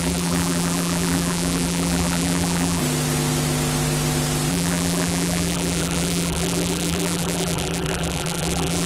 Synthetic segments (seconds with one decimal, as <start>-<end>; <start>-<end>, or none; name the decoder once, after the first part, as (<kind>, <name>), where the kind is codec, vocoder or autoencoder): 0.0-2.8 (vocoder, BigVGAN v2); 4.5-8.9